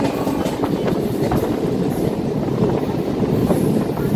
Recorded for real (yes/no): yes